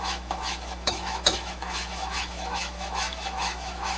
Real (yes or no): no